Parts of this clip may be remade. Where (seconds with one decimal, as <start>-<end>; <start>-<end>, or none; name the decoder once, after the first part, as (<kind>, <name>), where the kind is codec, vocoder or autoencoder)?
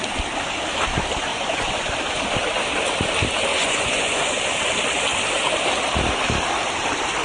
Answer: 1.3-1.9 (vocoder, Vocos); 3.5-4.4